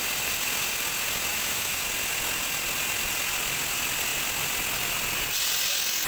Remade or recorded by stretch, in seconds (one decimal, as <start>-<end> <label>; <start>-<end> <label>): 0.0-1.3 recorded; 1.3-1.8 remade; 1.8-6.1 recorded